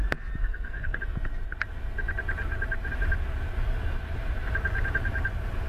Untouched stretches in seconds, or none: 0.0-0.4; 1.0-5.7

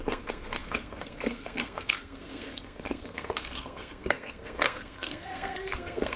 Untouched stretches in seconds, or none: none

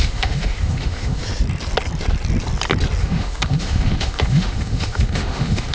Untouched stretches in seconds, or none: 1.2-3.0

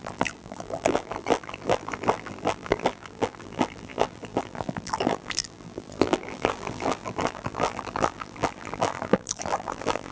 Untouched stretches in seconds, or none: none

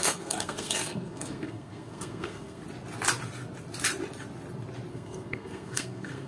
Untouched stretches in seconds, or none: 2.6-4.9

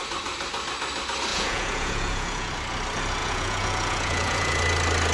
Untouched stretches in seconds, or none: 0.0-1.3; 2.5-3.2; 4.6-5.1

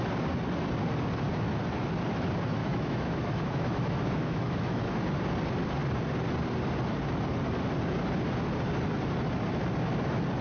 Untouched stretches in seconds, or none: 0.0-2.6; 5.0-10.4